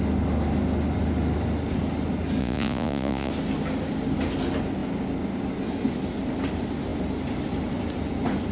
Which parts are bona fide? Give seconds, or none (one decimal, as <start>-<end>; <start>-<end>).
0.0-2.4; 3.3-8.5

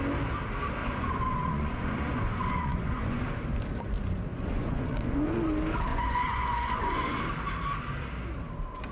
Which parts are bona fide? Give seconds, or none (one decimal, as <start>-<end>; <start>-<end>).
0.0-0.8; 3.2-4.3; 5.5-5.9; 7.2-8.9

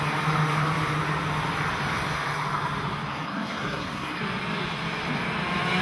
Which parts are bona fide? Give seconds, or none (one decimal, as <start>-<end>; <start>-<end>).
0.0-3.1; 4.2-5.8

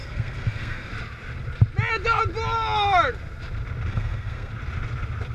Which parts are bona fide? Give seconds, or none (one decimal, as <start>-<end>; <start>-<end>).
0.9-3.9; 4.5-5.3

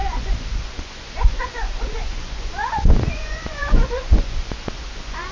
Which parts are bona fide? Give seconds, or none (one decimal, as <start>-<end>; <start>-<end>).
none